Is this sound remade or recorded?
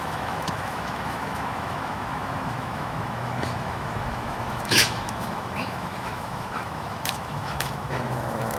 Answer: remade